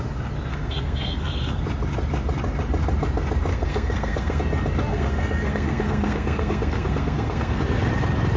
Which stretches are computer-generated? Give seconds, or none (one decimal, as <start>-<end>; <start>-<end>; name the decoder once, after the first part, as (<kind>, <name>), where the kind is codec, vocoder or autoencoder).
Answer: 0.5-1.6 (codec, SNAC); 3.5-4.4; 4.9-7.6